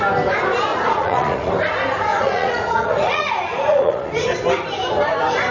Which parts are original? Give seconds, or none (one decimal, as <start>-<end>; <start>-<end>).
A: 0.0-0.7; 1.5-2.1; 4.1-5.5